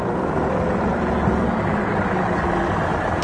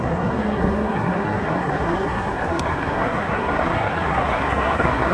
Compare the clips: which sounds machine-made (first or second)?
second